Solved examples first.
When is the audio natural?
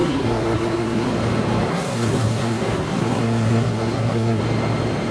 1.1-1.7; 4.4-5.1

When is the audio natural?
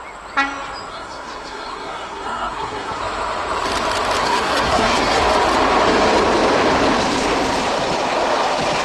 0.0-0.9; 3.0-4.2; 5.2-8.8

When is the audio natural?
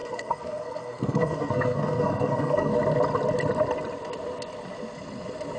2.7-5.6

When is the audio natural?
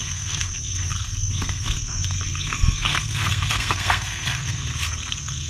none